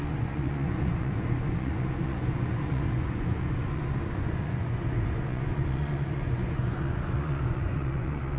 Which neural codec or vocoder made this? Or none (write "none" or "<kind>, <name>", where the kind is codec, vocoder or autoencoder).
vocoder, Vocos